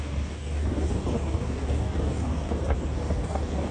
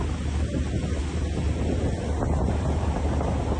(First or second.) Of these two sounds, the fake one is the first